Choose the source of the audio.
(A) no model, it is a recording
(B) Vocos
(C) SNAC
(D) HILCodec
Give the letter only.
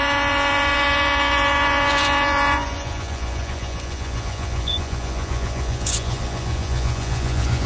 B